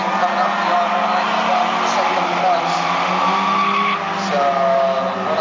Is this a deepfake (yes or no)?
no